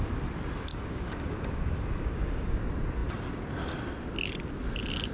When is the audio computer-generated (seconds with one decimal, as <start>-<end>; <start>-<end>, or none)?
0.7-2.6